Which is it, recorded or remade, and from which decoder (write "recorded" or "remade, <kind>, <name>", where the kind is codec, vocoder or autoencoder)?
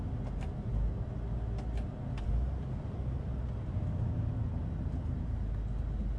recorded